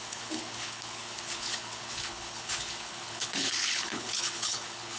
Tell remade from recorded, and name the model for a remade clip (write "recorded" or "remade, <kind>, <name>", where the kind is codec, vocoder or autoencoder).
remade, codec, HILCodec